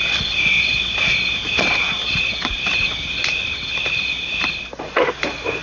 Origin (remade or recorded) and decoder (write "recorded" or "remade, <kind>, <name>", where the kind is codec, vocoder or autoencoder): recorded